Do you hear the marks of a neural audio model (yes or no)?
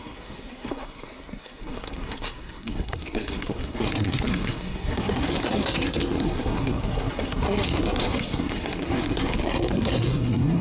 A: yes